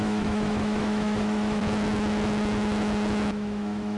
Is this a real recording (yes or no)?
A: no